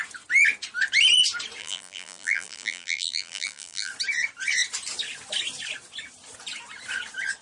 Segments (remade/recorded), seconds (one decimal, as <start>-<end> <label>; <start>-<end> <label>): 0.0-1.6 recorded; 1.6-3.9 remade; 3.9-7.4 recorded